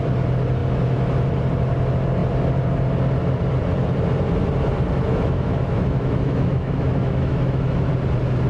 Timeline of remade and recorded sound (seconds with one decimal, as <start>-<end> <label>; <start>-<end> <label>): 0.0-5.1 recorded; 5.1-7.9 remade; 7.9-8.5 recorded